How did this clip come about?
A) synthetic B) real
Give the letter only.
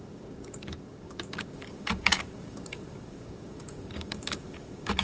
A